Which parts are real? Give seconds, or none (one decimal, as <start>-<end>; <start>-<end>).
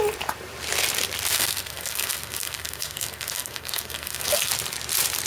0.0-1.3; 4.5-5.3